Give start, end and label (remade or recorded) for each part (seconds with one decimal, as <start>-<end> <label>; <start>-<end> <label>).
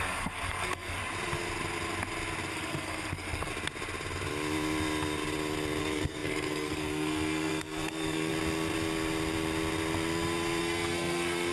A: 0.0-1.0 remade; 1.0-2.5 recorded; 2.5-3.5 remade; 3.5-5.8 recorded; 5.8-8.3 remade; 8.3-10.6 recorded; 10.6-11.5 remade